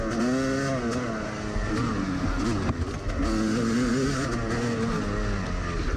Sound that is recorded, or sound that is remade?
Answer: recorded